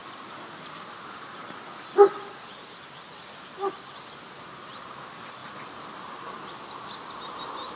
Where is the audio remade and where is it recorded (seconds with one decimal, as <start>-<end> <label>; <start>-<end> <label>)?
0.0-7.8 recorded